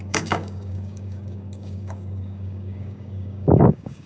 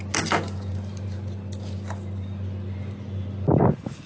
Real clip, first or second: second